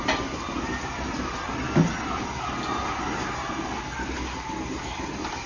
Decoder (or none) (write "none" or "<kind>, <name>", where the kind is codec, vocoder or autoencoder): none